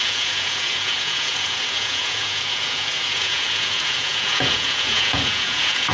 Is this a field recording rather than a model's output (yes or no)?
no